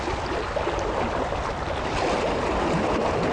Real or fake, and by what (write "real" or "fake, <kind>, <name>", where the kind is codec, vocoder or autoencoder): real